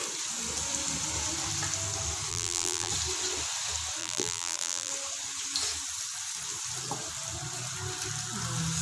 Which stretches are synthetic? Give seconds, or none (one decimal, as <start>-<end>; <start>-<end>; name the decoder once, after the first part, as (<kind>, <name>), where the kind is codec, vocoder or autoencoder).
2.3-2.9 (vocoder, BigVGAN v2); 4.0-4.9